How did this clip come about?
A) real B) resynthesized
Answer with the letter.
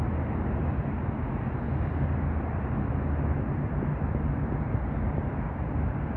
A